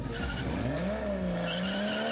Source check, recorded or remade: recorded